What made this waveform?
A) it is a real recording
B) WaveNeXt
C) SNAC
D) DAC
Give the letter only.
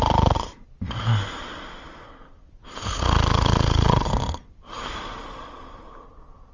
A